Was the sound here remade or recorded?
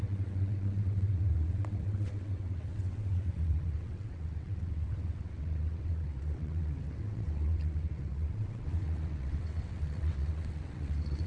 remade